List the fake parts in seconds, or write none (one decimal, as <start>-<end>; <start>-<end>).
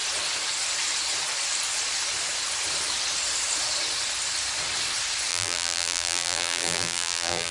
5.3-7.5